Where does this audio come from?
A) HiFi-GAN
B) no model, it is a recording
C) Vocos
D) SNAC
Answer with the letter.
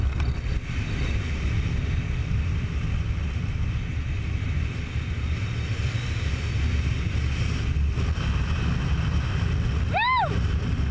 B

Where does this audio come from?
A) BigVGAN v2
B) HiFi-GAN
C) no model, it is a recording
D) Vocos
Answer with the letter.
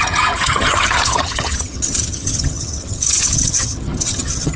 B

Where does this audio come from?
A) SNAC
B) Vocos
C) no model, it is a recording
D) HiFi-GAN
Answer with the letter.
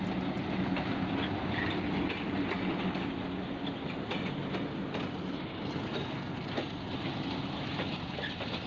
C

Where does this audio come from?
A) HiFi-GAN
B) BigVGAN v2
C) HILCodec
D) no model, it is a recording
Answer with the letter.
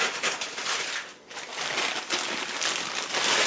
D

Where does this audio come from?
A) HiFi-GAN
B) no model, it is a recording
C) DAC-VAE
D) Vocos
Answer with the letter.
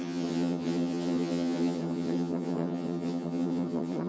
A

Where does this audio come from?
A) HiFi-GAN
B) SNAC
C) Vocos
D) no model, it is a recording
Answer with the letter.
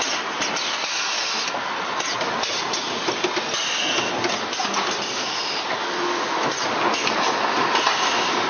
D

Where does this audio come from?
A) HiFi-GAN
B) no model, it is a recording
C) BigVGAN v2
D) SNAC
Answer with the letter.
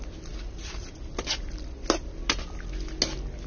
B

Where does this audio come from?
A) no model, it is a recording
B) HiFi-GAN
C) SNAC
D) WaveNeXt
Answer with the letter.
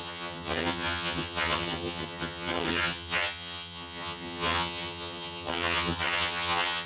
B